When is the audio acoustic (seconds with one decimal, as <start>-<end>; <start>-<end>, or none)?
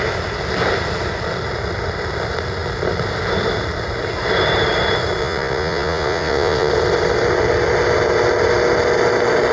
0.0-5.2; 6.7-9.5